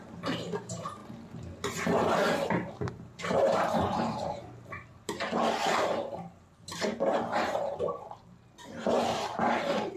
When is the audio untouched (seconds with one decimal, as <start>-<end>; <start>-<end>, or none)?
1.0-2.7; 5.6-7.0

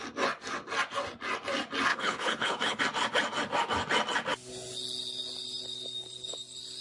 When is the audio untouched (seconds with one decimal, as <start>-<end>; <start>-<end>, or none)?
0.0-1.9; 2.8-6.8

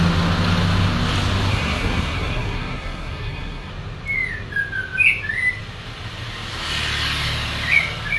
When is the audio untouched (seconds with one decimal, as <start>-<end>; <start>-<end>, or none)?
0.0-1.5; 3.7-8.2

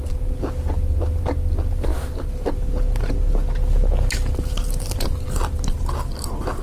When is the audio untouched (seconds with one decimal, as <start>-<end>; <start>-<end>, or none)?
0.0-6.6

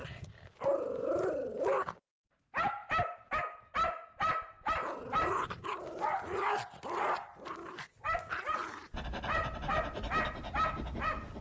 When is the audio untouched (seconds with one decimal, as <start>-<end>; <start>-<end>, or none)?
0.0-11.4

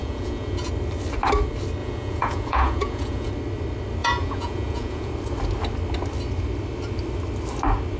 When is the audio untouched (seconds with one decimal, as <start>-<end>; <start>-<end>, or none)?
0.7-1.8; 3.3-4.0; 5.1-8.0

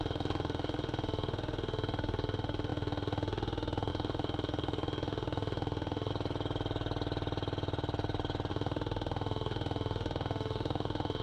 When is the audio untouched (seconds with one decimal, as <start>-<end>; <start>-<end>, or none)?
6.1-8.5